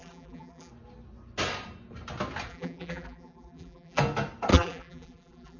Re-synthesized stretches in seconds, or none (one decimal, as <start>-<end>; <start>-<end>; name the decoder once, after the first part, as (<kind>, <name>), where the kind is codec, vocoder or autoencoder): 0.0-0.7 (vocoder, BigVGAN v2); 2.5-4.0; 4.5-5.6

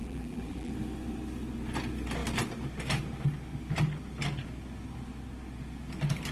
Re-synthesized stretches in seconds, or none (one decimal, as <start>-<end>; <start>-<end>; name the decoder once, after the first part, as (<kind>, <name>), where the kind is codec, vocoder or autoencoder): 0.0-0.7 (vocoder, BigVGAN v2)

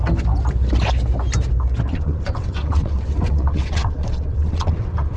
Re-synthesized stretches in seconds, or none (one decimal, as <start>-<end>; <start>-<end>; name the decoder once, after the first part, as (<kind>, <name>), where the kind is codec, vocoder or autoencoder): 1.9-5.2 (vocoder, WaveNeXt)